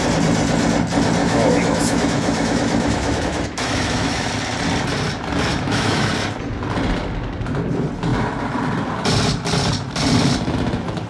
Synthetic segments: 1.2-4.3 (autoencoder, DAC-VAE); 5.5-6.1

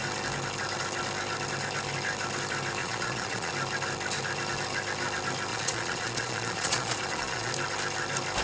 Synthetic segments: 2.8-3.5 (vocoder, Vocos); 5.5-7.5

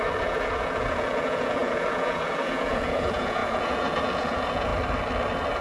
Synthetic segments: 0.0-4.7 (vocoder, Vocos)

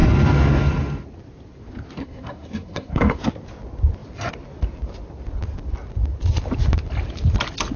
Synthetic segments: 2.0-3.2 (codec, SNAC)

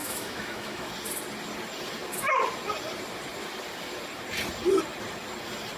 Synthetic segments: 0.0-0.9 (autoencoder, DAC-VAE)

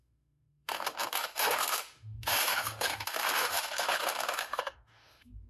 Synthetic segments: 0.0-5.5 (autoencoder, DAC-VAE)

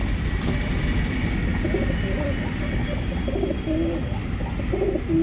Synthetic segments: none

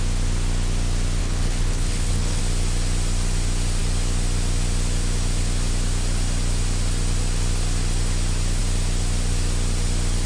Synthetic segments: 1.2-2.4 (codec, HILCodec)